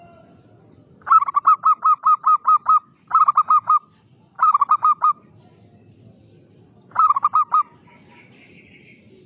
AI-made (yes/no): no